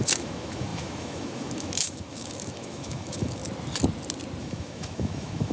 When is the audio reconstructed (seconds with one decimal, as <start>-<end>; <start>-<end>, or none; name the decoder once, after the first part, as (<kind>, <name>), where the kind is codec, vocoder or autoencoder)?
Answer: 0.0-3.4 (autoencoder, DAC-VAE); 4.4-5.5